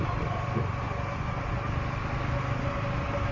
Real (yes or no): yes